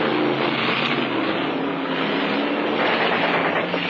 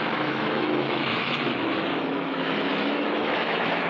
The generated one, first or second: second